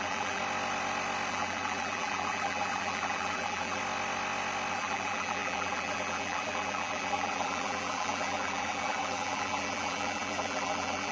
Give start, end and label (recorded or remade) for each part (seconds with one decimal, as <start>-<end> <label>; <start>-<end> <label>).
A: 0.0-0.4 remade; 0.4-1.3 recorded; 1.3-3.8 remade; 3.8-4.7 recorded; 4.7-11.1 remade